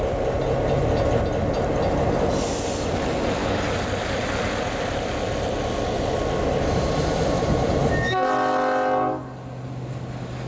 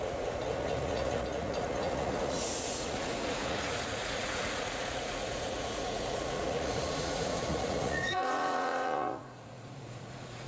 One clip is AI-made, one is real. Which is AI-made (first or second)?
second